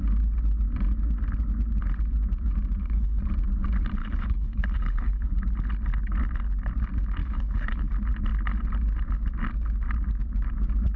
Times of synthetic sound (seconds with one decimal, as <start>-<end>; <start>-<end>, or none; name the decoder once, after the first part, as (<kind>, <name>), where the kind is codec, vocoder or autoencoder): 2.8-3.3 (codec, HILCodec); 4.0-5.4; 7.2-7.9